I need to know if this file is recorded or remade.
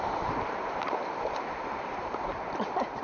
remade